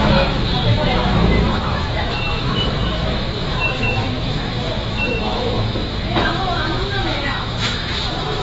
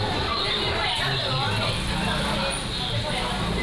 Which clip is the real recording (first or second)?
second